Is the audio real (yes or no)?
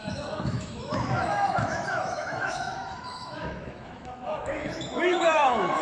no